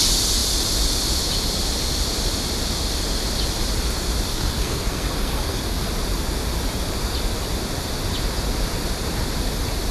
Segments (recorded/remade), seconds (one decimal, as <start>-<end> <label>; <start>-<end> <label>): 0.0-4.3 recorded; 4.3-5.9 remade; 5.9-9.9 recorded